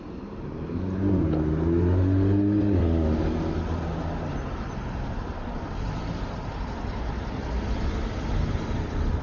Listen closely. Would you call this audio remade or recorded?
recorded